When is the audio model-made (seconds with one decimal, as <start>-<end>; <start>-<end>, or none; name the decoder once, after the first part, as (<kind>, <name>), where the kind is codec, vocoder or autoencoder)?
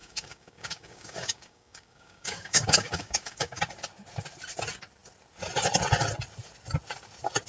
0.0-3.6 (codec, DAC)